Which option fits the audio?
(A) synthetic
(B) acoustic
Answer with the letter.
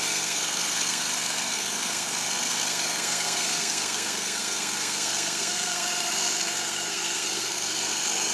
A